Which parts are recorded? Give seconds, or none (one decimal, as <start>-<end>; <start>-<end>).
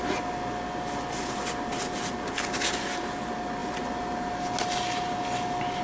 0.0-5.8